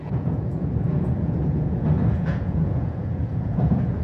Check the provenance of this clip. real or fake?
fake